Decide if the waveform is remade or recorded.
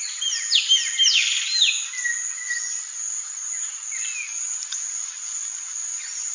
recorded